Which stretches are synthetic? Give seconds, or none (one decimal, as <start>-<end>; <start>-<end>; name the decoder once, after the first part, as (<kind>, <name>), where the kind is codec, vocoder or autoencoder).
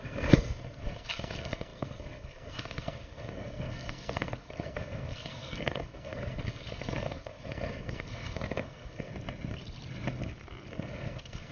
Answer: 0.0-9.1 (codec, SNAC); 10.7-11.5